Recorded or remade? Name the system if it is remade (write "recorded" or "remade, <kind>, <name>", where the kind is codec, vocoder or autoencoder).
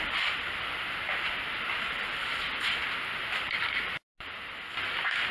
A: recorded